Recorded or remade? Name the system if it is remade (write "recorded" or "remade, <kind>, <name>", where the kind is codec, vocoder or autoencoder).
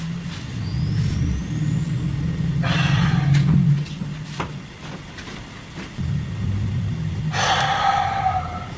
recorded